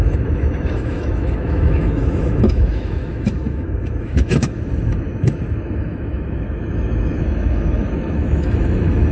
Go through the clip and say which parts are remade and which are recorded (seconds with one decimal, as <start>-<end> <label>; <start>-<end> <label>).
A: 0.0-9.1 remade